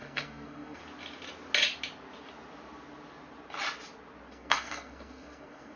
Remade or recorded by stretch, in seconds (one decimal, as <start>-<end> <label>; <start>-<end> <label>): 0.0-0.8 remade; 0.8-4.3 recorded; 4.3-5.8 remade